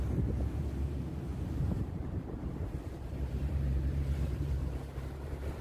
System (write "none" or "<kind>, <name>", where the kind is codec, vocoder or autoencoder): vocoder, BigVGAN v2